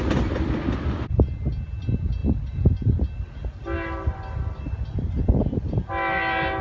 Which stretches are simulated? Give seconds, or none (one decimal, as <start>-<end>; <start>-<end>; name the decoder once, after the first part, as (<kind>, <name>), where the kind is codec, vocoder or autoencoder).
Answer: none

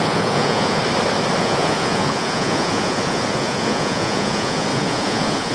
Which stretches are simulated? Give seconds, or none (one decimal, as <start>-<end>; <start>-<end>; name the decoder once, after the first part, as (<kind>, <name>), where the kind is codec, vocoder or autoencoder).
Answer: 0.0-0.8 (vocoder, Vocos); 1.4-5.5

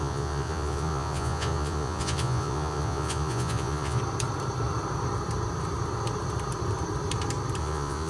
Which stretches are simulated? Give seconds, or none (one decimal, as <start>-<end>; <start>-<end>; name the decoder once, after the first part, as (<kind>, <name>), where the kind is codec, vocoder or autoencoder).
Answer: 0.0-4.0 (vocoder, Vocos); 7.6-8.1

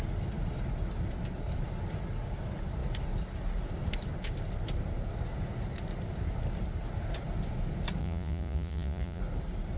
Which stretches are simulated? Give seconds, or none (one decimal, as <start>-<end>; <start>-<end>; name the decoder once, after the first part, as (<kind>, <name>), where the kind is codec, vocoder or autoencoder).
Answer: 8.0-9.2 (vocoder, Vocos)

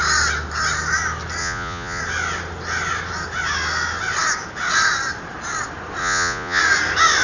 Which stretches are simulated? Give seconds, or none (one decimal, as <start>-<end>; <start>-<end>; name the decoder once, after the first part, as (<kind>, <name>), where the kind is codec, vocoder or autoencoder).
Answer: 1.4-2.0 (vocoder, Vocos); 6.0-6.6

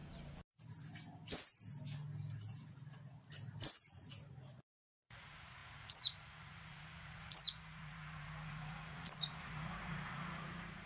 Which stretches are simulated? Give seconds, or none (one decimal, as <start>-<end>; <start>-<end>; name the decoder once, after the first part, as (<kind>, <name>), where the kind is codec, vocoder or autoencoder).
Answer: 3.7-10.9 (vocoder, Vocos)

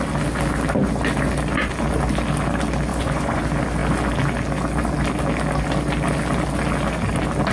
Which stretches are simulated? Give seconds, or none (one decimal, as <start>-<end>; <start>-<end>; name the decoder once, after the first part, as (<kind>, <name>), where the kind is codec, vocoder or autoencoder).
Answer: 2.9-3.4 (vocoder, Vocos)